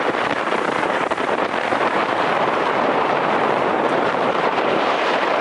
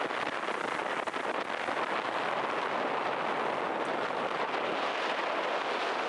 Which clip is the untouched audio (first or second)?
second